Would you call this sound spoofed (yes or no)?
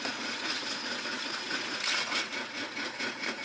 yes